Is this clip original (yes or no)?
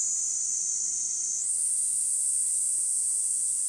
yes